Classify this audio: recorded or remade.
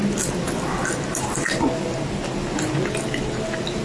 recorded